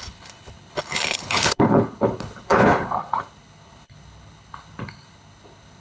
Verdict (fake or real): fake